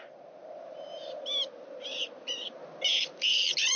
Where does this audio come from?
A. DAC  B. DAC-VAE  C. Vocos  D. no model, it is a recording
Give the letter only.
D